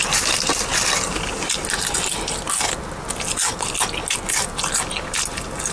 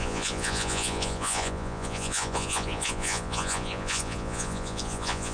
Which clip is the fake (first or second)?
second